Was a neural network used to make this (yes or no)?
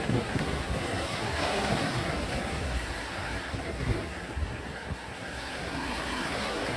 yes